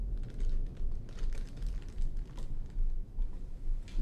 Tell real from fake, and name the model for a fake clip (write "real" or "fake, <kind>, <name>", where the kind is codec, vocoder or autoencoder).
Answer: real